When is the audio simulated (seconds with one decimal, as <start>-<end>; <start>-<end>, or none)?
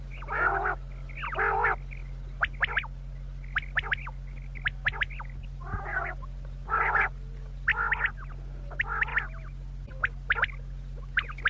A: none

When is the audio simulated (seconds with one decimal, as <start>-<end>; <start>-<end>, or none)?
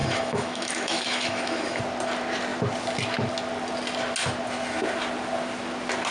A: 0.0-1.8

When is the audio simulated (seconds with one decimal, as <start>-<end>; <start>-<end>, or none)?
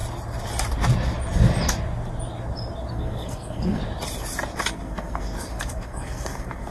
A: 2.9-3.8; 4.7-6.7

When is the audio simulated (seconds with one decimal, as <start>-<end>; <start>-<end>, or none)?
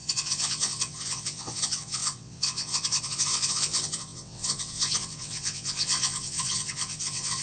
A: 0.0-7.4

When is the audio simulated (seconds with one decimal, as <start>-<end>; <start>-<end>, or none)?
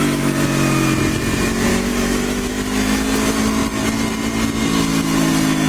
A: 1.7-2.5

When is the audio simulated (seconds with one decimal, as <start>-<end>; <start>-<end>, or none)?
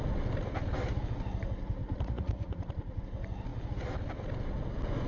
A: 1.8-3.0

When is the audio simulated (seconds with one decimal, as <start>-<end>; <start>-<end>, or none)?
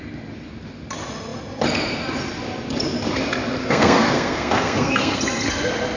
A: 3.6-5.2